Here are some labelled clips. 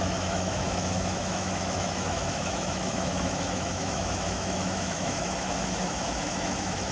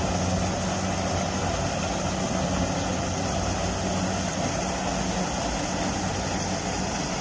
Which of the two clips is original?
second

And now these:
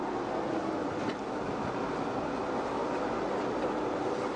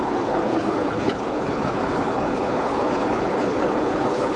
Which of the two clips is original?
first